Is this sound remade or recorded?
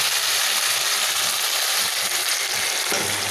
recorded